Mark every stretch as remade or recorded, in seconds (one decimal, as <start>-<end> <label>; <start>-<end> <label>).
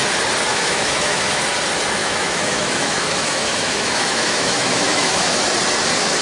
0.0-0.5 recorded; 0.5-1.4 remade; 1.4-2.0 recorded; 2.0-5.4 remade; 5.4-6.2 recorded